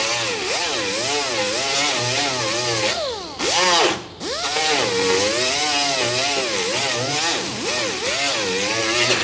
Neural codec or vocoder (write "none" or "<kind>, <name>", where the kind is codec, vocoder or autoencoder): none